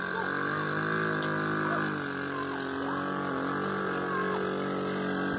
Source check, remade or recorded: recorded